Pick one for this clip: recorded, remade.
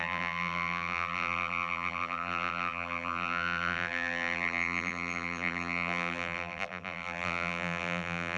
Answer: remade